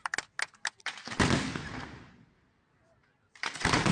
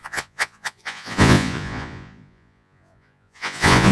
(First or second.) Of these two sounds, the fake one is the second